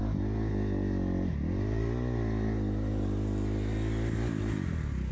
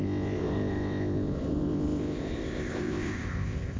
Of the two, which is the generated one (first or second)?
second